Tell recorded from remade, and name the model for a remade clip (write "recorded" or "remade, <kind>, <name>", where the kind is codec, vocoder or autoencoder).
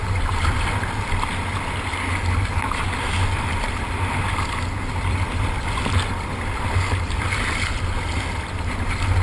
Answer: recorded